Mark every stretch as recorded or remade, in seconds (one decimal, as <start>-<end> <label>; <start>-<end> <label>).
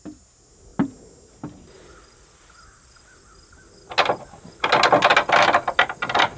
0.0-6.4 recorded